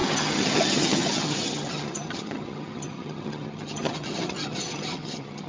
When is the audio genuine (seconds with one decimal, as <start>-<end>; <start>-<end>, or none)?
none